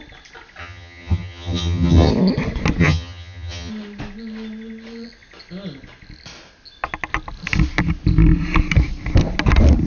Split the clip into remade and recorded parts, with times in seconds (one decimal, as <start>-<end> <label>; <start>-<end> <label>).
0.0-0.6 recorded; 0.6-2.1 remade; 2.1-2.8 recorded; 2.8-3.7 remade; 3.7-9.9 recorded